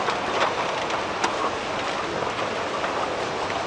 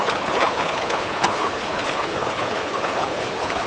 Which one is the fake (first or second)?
second